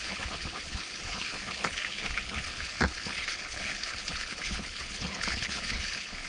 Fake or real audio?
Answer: fake